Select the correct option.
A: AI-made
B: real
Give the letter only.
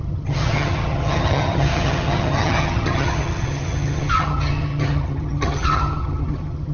A